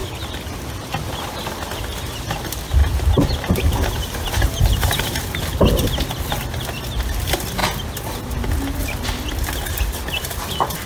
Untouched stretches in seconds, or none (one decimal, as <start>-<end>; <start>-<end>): 0.0-2.8; 5.4-10.9